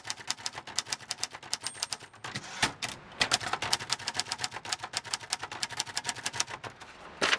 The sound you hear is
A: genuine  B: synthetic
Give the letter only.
A